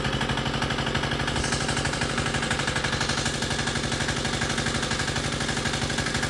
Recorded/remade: recorded